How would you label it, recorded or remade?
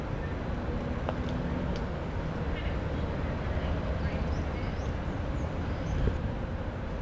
recorded